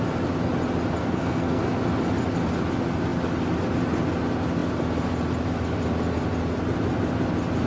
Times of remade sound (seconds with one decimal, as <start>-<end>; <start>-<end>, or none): 1.0-1.6